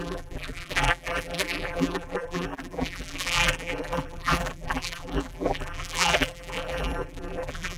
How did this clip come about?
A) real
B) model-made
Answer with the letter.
B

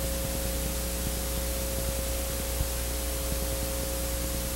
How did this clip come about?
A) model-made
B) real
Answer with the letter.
B